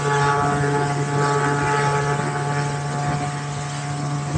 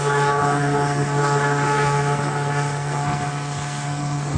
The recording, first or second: first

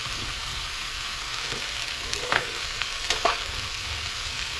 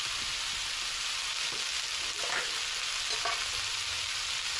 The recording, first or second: second